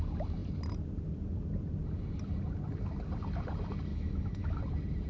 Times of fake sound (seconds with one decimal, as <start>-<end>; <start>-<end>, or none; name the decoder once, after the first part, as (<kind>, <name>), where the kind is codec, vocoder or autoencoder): 3.9-4.6 (autoencoder, DAC-VAE)